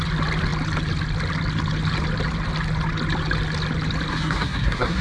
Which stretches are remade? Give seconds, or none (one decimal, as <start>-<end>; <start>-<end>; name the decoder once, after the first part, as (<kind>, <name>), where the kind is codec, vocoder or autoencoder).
4.1-5.0 (codec, SNAC)